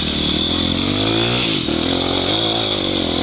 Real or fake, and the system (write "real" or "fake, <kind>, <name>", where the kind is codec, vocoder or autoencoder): real